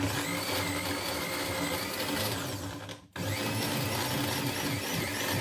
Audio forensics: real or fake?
real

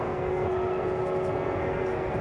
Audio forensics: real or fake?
fake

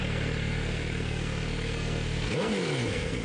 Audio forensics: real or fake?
fake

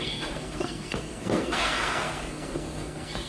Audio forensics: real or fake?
fake